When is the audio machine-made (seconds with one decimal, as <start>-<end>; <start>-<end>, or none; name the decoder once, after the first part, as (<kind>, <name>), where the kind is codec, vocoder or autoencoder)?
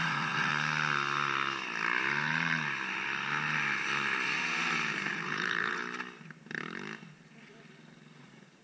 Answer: 0.0-0.5 (vocoder, Vocos); 5.1-5.8; 8.2-8.6